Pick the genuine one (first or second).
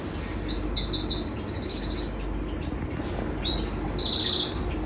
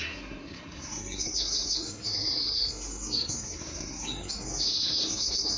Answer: first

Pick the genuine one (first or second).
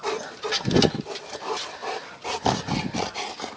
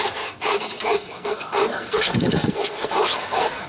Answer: first